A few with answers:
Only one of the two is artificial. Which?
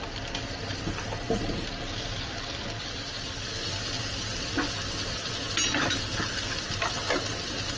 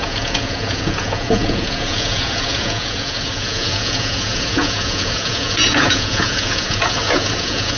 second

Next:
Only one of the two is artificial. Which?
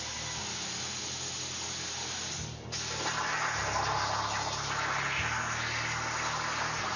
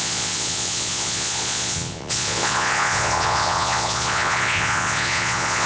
second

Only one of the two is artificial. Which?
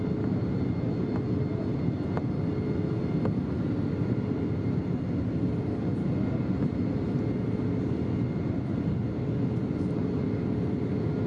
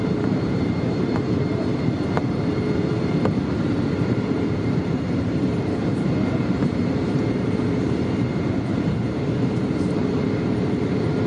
second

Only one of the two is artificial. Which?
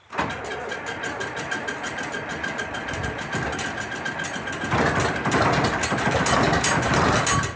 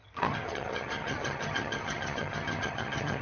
second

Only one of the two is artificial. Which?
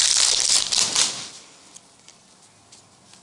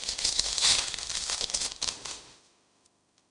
second